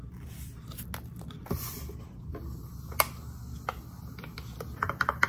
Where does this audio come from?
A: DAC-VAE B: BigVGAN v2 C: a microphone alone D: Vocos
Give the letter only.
C